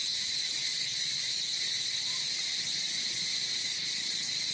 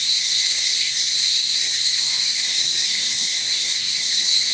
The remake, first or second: second